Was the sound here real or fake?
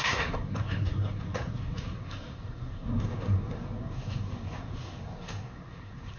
fake